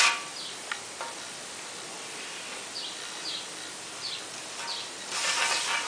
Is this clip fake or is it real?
real